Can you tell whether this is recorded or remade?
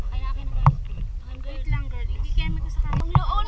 recorded